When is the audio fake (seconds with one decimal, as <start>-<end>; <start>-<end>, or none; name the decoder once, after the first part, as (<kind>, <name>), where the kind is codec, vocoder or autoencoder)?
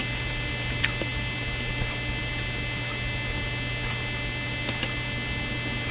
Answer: none